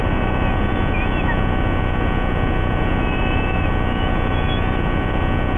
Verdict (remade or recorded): recorded